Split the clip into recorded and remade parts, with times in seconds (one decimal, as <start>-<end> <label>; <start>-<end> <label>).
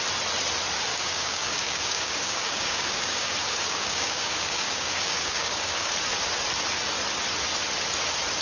0.0-0.9 recorded; 0.9-5.9 remade; 5.9-8.4 recorded